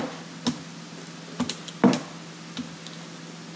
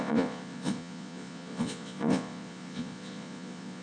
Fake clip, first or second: second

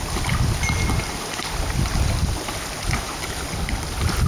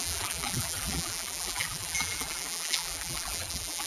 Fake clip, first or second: second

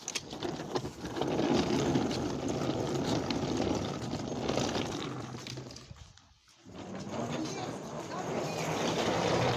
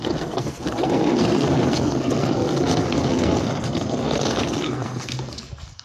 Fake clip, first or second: second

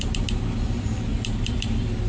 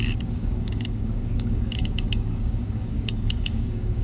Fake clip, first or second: second